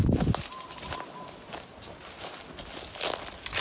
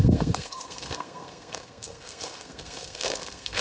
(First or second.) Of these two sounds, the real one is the first